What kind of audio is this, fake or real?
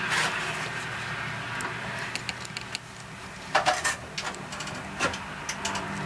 real